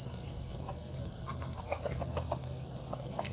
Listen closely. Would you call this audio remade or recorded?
remade